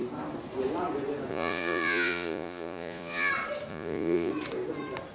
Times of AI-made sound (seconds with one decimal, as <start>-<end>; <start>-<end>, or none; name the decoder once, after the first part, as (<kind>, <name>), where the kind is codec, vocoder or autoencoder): 1.3-3.3 (vocoder, Vocos); 3.7-4.3